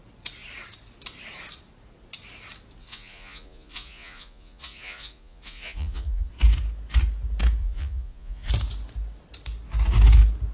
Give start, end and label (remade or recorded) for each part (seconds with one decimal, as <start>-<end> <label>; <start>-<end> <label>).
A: 0.0-2.8 recorded; 2.8-6.3 remade; 6.3-7.6 recorded; 7.6-8.5 remade; 8.5-10.5 recorded